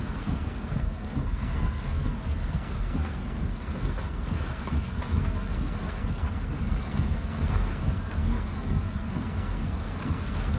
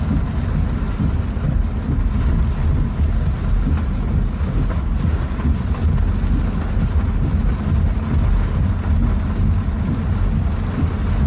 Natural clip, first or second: second